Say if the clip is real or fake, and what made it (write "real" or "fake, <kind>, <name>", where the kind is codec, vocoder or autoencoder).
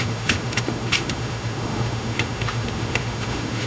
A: fake, autoencoder, DAC-VAE